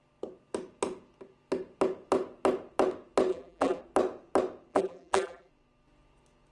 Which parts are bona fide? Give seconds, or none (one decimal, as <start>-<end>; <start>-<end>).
0.0-3.3; 3.8-4.7; 5.5-6.5